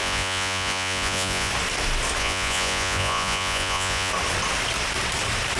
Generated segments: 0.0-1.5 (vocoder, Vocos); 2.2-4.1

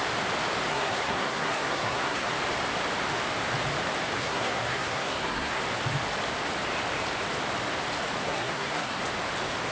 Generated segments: 0.7-2.3 (codec, SNAC); 4.2-5.6; 8.2-9.0

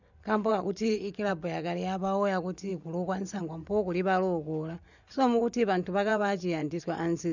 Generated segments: 0.5-1.3 (vocoder, Vocos); 4.8-5.4; 6.1-6.8